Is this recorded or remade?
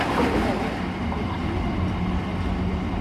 recorded